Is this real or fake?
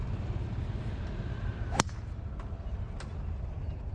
real